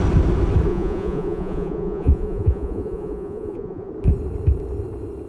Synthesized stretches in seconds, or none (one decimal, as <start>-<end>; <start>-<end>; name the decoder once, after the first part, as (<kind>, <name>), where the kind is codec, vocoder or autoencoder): 0.7-3.9 (vocoder, Vocos)